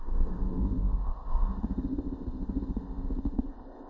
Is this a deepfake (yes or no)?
yes